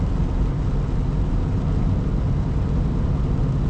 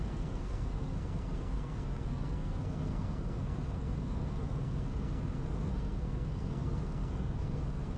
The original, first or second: first